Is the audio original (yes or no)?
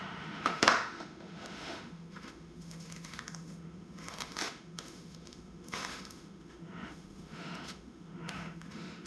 no